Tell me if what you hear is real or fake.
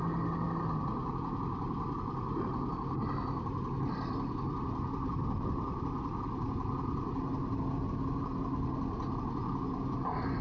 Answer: fake